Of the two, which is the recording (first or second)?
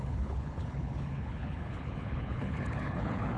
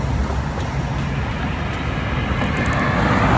second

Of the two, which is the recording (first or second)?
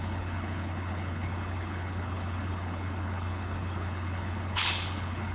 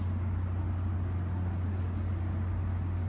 second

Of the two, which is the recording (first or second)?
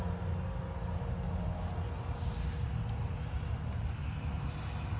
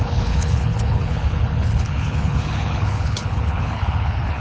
first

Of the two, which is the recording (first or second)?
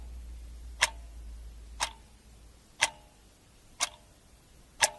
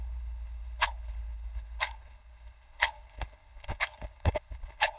first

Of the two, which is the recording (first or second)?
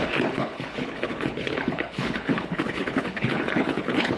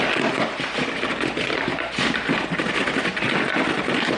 second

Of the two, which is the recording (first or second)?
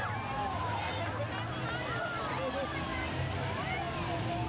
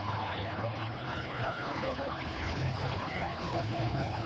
first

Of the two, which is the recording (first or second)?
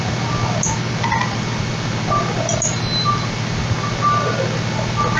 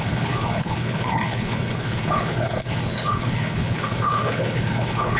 first